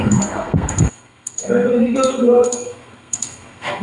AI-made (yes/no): yes